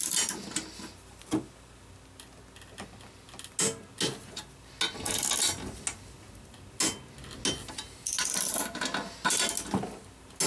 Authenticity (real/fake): real